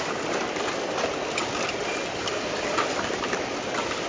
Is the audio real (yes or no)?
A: yes